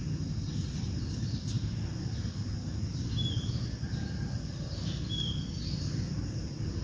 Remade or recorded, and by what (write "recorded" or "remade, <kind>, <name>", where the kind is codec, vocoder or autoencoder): recorded